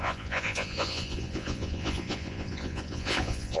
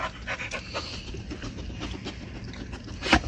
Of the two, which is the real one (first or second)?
second